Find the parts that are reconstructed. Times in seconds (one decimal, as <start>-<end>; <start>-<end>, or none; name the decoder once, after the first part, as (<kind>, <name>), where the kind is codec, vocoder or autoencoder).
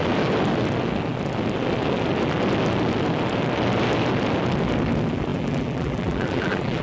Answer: 5.3-6.8 (vocoder, BigVGAN v2)